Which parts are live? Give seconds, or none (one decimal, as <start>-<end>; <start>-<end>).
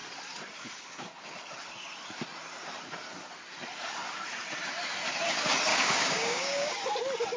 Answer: 0.0-5.7; 6.8-7.4